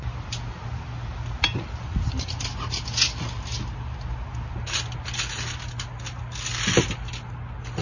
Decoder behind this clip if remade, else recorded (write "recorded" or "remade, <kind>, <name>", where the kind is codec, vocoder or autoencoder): recorded